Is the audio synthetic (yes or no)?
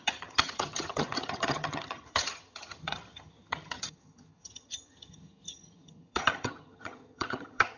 yes